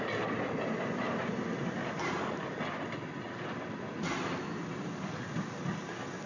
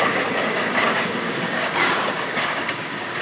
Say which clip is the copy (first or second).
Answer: second